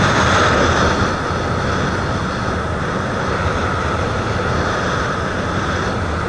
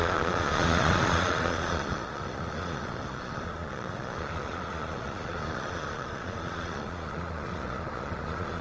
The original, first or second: first